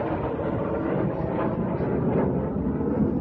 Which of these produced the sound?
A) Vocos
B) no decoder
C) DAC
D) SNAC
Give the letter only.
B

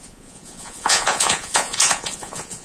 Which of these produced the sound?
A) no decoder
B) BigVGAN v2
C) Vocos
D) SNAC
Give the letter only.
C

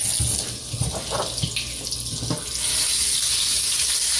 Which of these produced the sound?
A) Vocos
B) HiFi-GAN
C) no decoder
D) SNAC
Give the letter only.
C